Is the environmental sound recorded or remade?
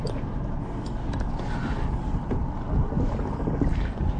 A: recorded